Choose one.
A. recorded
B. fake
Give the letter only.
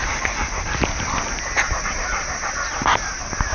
A